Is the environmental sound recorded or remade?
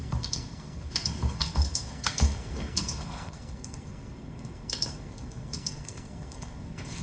remade